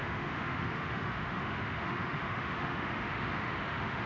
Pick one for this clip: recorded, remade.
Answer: remade